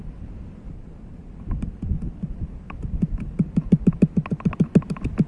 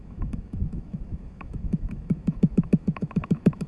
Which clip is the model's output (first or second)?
second